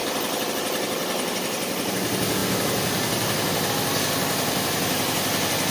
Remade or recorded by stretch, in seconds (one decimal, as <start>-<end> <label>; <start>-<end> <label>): 0.0-5.7 recorded